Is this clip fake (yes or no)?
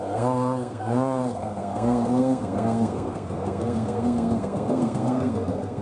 yes